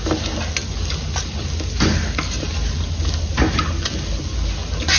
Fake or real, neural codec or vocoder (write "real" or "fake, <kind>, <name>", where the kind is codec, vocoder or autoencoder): real